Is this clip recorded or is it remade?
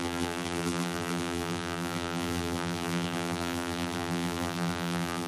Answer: remade